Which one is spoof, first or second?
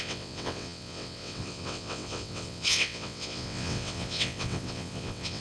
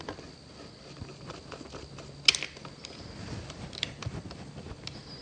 first